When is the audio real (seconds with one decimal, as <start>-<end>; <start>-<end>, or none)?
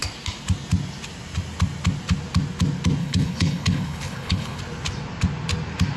0.0-3.0; 4.6-6.0